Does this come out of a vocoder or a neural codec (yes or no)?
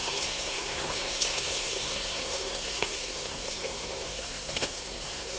yes